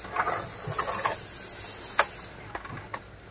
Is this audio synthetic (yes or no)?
no